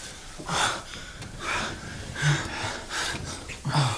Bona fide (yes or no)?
no